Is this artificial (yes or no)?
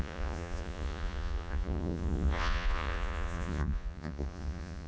yes